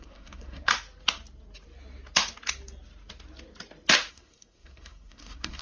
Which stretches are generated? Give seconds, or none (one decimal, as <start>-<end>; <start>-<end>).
0.0-0.7; 4.1-5.6